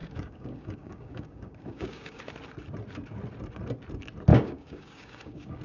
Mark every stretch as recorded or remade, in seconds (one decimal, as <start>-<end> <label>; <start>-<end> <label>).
0.0-2.2 remade; 2.2-4.3 recorded; 4.3-5.6 remade